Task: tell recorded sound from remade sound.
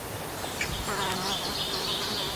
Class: recorded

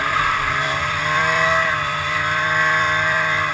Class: remade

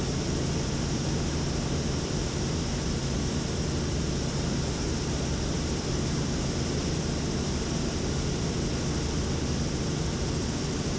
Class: remade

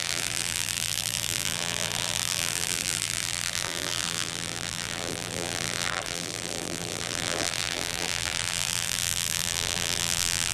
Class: remade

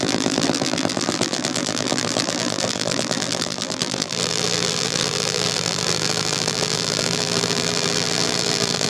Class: remade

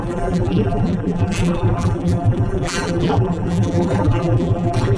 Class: remade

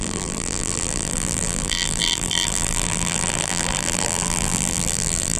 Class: remade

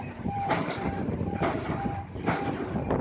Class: remade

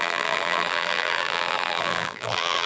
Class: remade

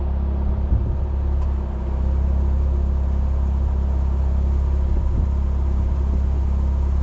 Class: recorded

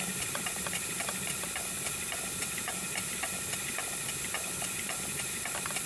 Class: remade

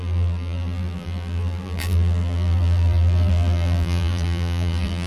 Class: remade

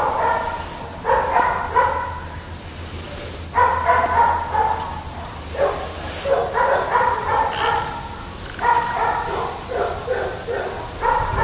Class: recorded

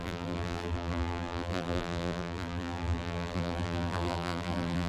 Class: remade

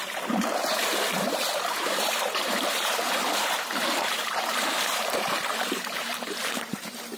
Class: remade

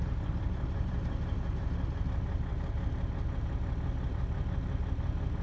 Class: recorded